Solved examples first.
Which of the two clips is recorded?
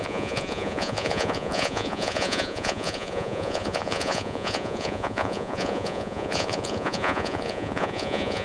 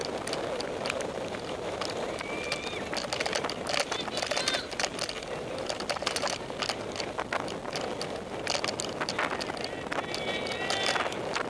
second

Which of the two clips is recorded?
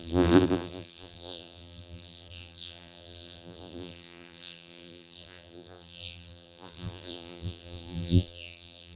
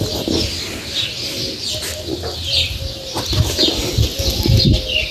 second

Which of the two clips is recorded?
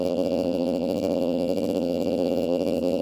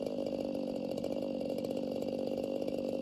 second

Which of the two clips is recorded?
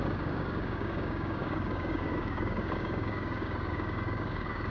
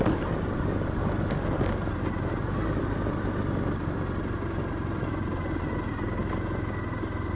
second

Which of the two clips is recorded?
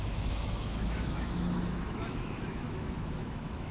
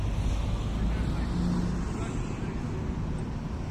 second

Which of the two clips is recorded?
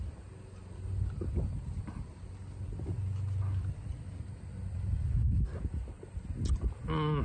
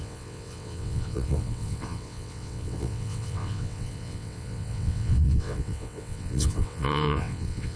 first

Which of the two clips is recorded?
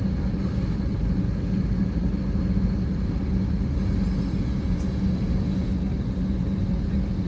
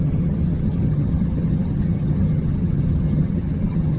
first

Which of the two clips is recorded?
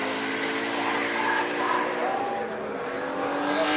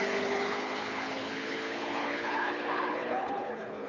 first